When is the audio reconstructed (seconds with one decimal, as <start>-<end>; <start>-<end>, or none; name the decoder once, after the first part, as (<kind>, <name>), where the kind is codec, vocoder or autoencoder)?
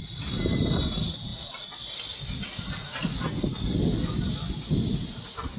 none